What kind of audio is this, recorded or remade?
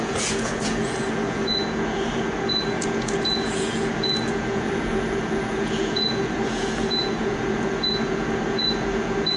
remade